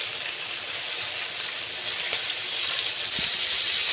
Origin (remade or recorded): recorded